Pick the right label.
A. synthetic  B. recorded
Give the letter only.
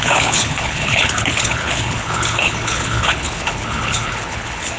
A